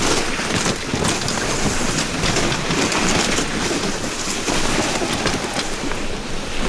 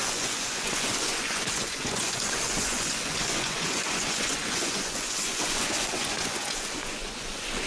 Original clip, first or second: first